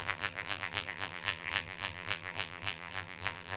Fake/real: fake